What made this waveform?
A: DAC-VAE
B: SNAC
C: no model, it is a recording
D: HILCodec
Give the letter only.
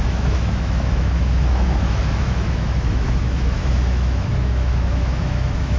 A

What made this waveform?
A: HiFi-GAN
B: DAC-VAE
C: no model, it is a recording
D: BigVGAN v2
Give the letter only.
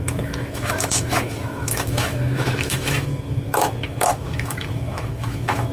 B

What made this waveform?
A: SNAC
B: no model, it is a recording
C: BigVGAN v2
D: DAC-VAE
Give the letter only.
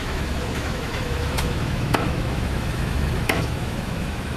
D